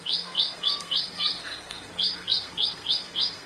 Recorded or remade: remade